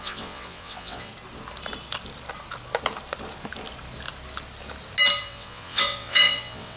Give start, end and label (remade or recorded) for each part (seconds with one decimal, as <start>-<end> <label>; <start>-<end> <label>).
0.0-1.1 remade; 1.1-5.2 recorded; 5.2-6.8 remade